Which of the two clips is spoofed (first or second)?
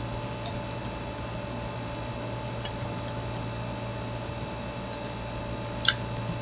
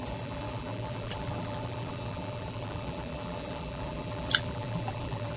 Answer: second